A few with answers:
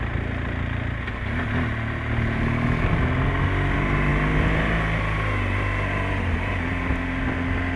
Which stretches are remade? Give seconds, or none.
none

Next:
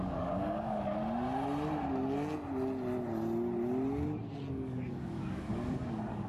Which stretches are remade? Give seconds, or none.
0.0-1.0 (codec, DAC); 4.5-6.3